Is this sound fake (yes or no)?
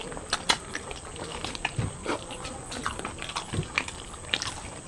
no